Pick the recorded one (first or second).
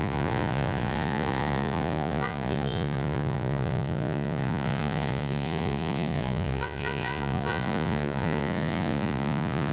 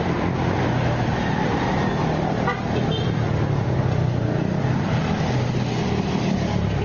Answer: second